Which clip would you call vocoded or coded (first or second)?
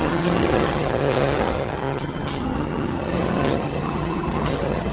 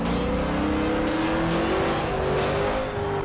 first